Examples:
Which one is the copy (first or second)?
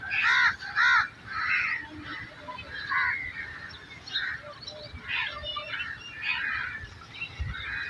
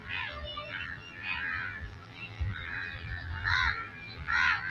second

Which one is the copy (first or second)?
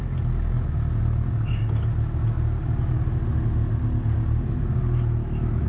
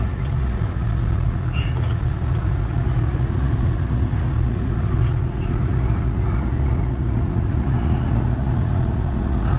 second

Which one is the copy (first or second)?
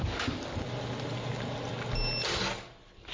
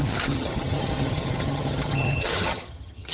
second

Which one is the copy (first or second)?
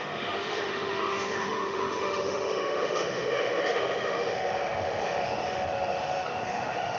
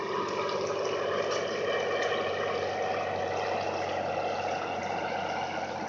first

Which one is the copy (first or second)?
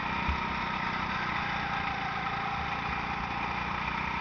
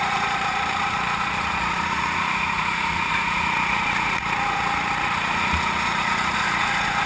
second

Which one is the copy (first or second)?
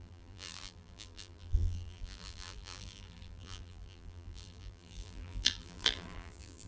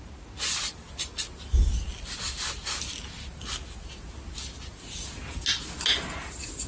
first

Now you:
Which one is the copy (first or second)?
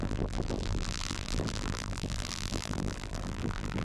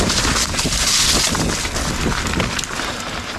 first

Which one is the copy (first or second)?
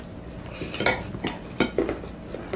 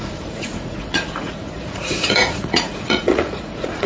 second